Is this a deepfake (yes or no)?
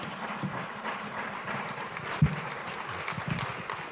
no